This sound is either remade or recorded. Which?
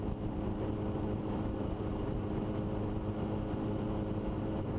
recorded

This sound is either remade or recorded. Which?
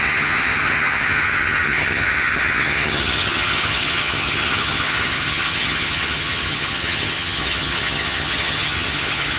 remade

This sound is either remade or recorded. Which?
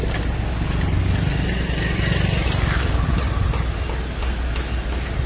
recorded